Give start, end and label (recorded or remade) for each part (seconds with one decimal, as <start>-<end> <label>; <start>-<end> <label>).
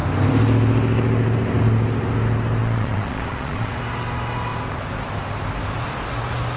0.0-2.6 recorded; 2.6-3.7 remade; 3.7-6.6 recorded